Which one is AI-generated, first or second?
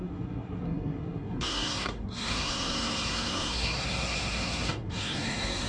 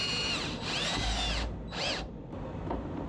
first